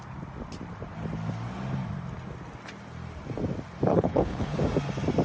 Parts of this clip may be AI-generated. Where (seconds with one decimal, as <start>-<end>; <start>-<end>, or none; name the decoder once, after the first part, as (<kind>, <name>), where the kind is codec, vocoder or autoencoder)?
3.9-4.5 (codec, HILCodec)